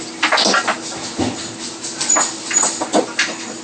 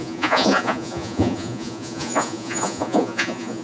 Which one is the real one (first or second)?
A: first